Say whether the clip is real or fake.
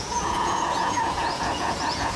fake